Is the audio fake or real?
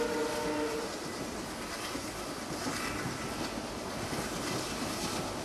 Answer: real